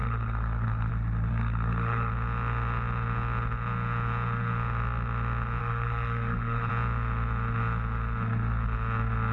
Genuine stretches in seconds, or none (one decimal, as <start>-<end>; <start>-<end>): 0.9-1.3; 2.1-5.6; 6.7-9.3